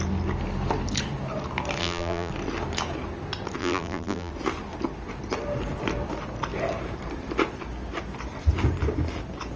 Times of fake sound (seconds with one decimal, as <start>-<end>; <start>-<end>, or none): 1.8-2.3; 3.6-4.3